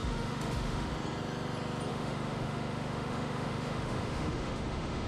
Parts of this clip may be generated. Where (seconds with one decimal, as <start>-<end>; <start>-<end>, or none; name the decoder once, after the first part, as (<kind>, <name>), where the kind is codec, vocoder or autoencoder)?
0.0-0.9 (autoencoder, DAC-VAE); 1.9-5.1